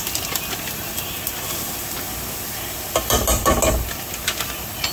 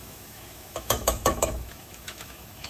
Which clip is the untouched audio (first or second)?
first